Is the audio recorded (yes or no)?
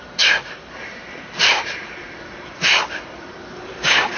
no